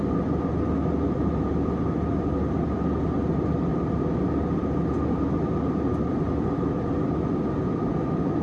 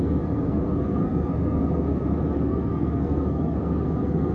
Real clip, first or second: first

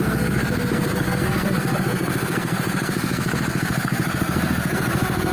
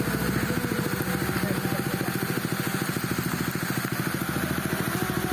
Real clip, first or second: second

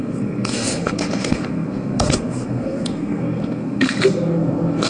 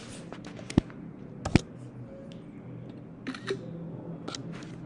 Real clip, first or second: second